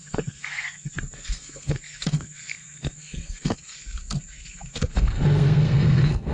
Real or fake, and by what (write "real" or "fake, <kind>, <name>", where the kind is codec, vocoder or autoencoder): fake, codec, SNAC